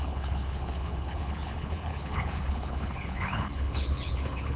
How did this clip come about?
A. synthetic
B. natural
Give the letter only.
A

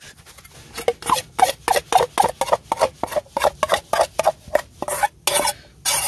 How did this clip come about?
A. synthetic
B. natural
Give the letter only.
B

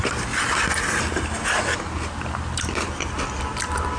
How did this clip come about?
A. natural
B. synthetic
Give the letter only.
A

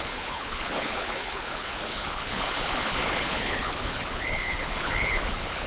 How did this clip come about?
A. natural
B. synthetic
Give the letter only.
B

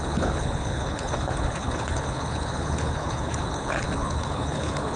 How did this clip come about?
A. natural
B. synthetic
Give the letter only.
B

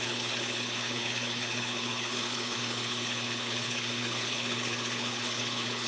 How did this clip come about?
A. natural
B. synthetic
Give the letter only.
B